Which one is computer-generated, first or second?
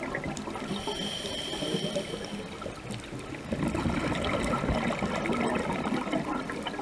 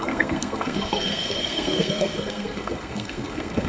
second